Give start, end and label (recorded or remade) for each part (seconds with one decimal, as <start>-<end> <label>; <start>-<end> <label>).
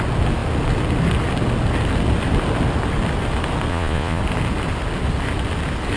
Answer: 0.0-3.7 recorded; 3.7-4.2 remade; 4.2-6.0 recorded